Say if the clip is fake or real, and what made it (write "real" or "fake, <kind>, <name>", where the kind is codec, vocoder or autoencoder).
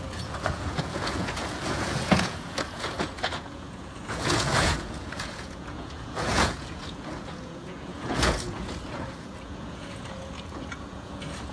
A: fake, vocoder, Vocos